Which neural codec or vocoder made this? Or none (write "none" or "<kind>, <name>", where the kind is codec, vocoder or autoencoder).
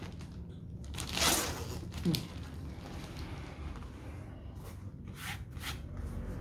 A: none